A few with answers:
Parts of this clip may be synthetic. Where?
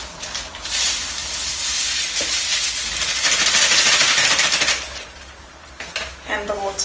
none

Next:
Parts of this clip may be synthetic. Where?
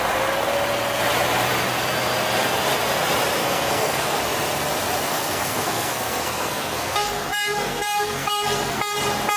3.4-4.2; 5.1-8.8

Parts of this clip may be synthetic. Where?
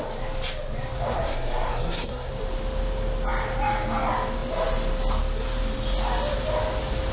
1.1-2.3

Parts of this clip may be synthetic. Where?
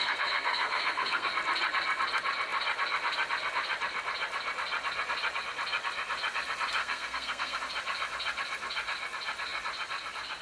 0.0-1.3; 6.8-7.6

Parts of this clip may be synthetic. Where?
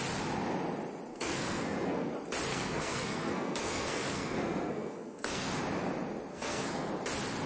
1.1-2.1; 2.5-5.5; 6.3-6.9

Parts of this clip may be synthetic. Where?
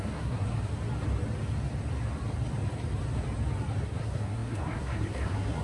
0.0-0.7; 3.8-5.6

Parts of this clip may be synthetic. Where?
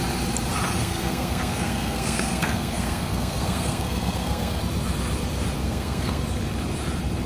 0.8-4.6; 5.6-6.2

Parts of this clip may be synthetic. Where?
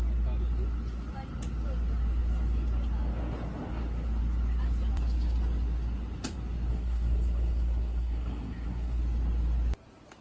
6.7-9.0